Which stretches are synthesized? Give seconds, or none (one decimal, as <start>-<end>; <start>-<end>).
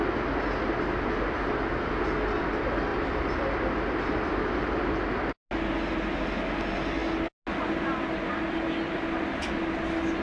2.9-5.2